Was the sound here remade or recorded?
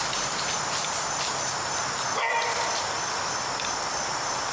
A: recorded